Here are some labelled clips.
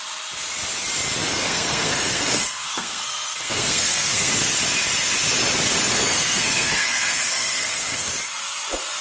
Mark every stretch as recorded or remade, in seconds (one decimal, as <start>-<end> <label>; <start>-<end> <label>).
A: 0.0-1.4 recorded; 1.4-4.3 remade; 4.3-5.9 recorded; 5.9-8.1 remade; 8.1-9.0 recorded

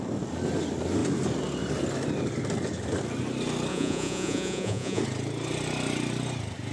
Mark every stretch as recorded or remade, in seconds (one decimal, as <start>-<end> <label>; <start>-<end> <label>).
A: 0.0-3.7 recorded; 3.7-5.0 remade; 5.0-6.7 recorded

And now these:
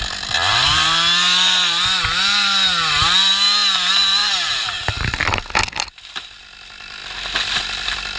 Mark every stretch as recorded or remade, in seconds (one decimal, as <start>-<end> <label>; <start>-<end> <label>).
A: 0.0-8.2 recorded

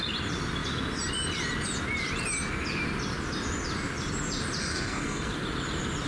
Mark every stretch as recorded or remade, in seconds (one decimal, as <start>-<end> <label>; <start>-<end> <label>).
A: 0.0-4.6 recorded; 4.6-5.3 remade; 5.3-6.1 recorded

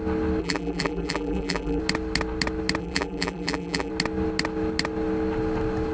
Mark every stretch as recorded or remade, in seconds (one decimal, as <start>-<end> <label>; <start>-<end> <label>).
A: 0.0-0.4 recorded; 0.4-1.8 remade; 1.8-2.8 recorded; 2.8-3.9 remade; 3.9-5.9 recorded